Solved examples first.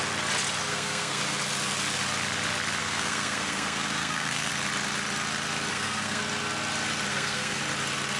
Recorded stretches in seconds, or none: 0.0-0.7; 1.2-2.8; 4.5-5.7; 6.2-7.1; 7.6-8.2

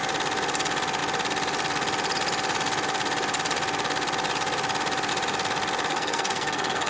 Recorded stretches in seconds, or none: 0.0-5.9

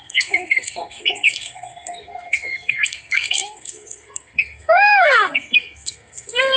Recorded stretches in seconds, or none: none

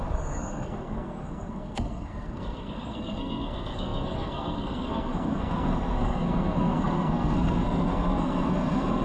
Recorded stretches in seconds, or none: none

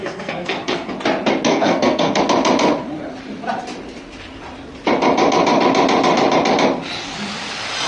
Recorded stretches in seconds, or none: 0.9-1.5; 2.2-7.9